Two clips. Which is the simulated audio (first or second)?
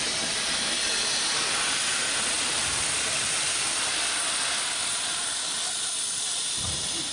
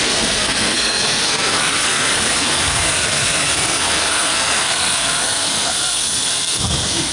second